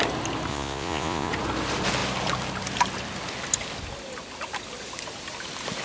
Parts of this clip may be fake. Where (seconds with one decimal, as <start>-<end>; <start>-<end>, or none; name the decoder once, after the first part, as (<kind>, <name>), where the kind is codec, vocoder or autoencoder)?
0.5-1.3 (vocoder, Vocos)